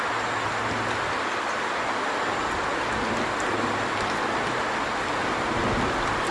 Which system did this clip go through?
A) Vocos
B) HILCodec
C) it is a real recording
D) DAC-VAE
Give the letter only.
C